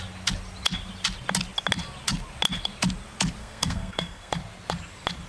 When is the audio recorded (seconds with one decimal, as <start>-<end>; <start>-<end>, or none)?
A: 0.0-3.4; 4.3-5.3